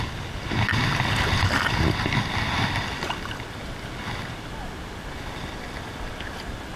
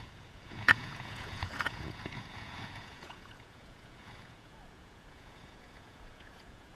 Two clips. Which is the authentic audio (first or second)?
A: first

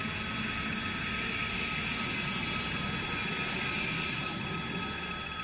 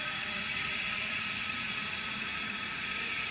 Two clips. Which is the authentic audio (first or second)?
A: first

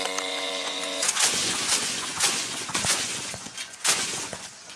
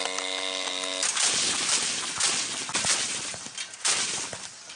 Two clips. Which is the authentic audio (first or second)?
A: second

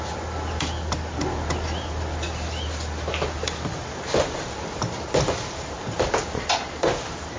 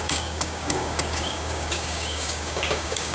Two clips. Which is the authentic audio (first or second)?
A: first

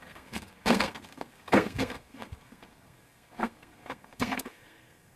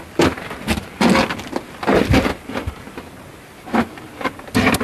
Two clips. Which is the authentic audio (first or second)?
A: second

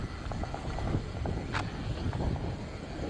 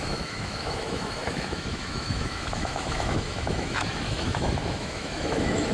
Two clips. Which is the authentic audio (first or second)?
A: first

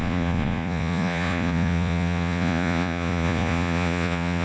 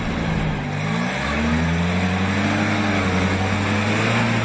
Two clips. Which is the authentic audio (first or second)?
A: second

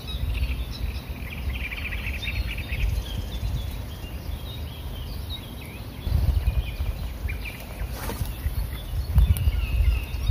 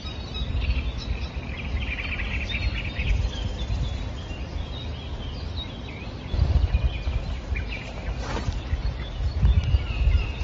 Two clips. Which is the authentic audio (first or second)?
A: first